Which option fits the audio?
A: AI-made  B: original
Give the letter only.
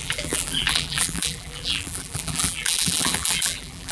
A